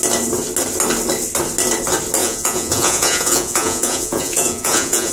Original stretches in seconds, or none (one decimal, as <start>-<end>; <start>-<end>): 0.0-2.2